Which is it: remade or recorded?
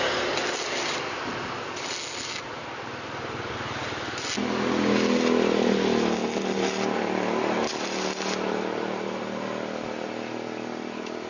recorded